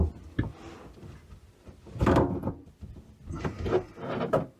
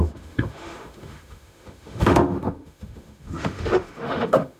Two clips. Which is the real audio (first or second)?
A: first